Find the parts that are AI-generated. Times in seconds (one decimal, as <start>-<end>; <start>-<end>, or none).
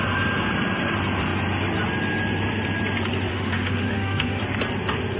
3.3-4.4